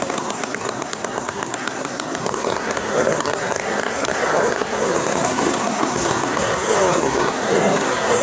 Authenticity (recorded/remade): remade